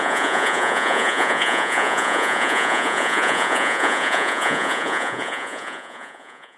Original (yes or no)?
no